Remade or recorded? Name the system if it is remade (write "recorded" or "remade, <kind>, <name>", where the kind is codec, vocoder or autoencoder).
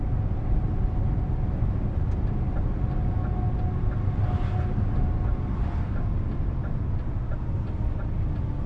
recorded